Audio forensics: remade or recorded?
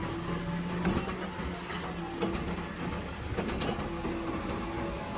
recorded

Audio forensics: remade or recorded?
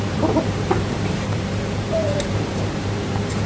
remade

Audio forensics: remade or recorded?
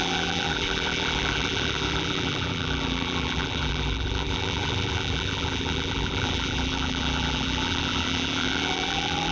remade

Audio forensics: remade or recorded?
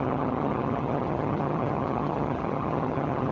remade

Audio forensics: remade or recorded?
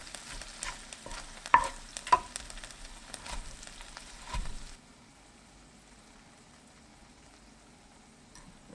recorded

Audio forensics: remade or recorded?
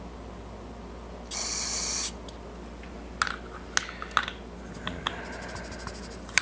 recorded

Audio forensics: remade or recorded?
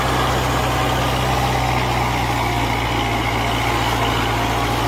recorded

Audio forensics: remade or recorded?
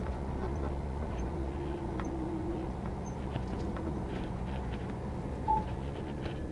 remade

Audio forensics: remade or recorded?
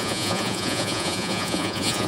remade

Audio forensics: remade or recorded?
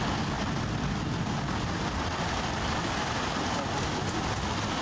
recorded